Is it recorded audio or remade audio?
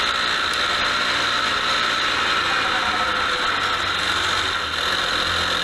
recorded